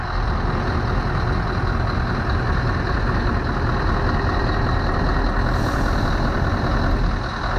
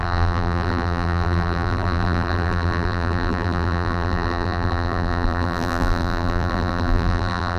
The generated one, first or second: second